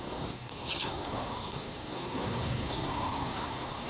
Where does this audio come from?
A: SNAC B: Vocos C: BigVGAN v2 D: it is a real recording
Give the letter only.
A